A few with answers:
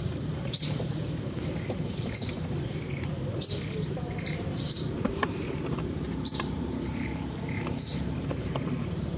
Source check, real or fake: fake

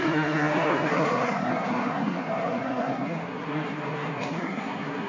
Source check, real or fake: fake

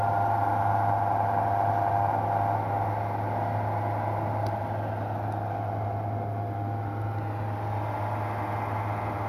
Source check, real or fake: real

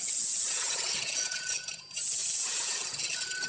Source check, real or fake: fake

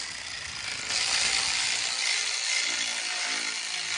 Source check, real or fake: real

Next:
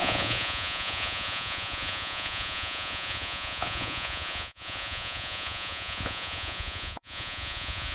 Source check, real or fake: fake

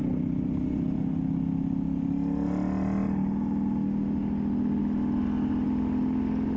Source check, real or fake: real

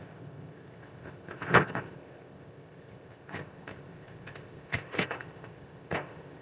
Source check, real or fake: fake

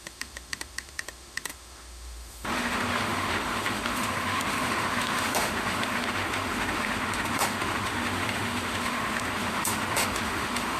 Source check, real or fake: fake